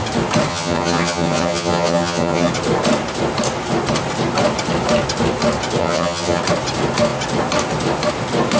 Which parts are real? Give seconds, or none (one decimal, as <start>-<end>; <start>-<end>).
0.0-0.5; 2.5-5.8; 6.4-8.6